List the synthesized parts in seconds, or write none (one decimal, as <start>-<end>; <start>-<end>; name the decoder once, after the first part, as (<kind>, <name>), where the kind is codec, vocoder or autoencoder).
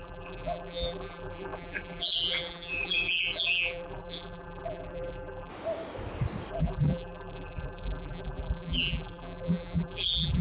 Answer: 0.0-5.5 (vocoder, BigVGAN v2); 6.5-10.4